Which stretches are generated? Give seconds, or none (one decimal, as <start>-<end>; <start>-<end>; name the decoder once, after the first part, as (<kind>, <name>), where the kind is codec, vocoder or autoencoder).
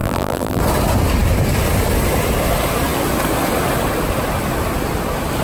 0.0-0.6 (vocoder, BigVGAN v2)